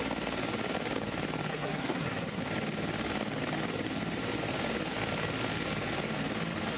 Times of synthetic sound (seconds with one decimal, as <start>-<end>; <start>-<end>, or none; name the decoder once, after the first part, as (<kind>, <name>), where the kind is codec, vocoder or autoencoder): 1.5-2.4 (codec, SNAC)